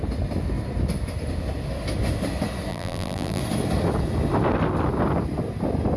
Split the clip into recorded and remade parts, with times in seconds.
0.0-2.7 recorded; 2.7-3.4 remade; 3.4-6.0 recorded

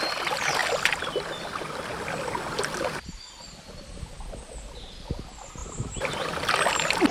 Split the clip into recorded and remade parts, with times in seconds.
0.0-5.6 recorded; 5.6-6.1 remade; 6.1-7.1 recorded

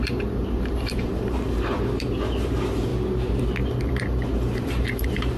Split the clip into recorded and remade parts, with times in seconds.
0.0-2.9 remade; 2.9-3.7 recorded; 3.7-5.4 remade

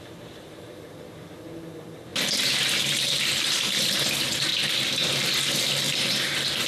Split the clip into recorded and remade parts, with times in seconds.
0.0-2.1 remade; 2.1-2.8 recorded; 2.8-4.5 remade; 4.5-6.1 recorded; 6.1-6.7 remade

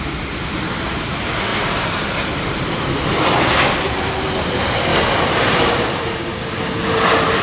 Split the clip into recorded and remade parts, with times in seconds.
0.0-1.5 recorded; 1.5-3.4 remade; 3.4-4.9 recorded; 4.9-6.0 remade; 6.0-7.4 recorded

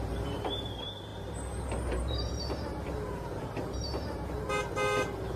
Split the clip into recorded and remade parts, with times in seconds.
0.0-5.4 remade

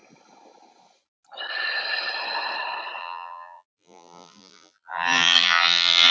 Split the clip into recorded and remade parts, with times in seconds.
0.0-3.0 recorded; 3.0-6.1 remade